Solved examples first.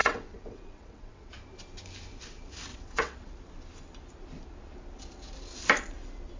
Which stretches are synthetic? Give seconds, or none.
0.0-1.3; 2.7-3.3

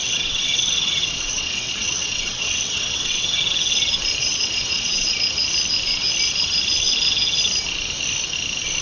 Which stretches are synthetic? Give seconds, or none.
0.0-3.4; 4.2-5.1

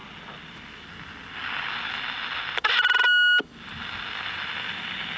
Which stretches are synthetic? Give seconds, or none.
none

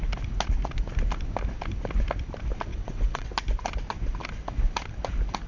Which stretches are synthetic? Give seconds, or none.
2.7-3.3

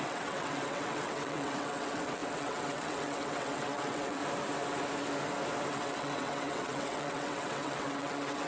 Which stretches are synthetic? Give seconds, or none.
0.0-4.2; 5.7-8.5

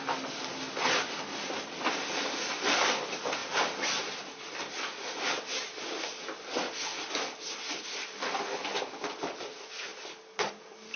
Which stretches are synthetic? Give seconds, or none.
none